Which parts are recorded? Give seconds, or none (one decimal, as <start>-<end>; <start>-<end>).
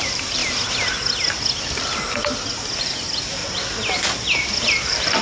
0.4-2.8; 3.4-4.6